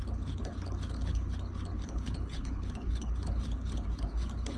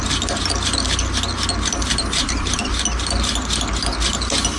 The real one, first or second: second